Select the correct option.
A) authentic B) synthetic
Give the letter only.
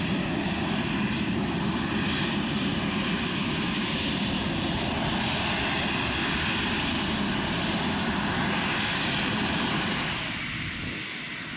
A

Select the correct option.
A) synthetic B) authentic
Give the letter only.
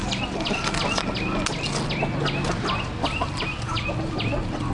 B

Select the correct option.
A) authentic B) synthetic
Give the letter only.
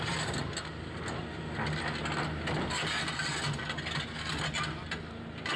A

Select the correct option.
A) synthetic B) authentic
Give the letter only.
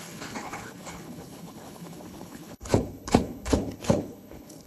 A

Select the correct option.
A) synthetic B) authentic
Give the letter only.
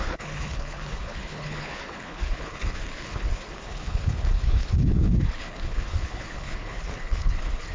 A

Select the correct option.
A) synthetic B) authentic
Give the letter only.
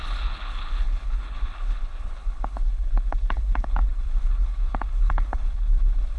A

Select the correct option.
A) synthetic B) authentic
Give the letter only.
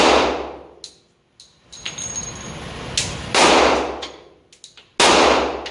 B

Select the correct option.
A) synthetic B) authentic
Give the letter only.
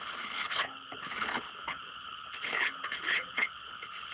A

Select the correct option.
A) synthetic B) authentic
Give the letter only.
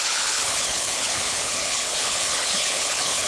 A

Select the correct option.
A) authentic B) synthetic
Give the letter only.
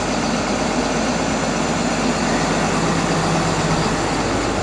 A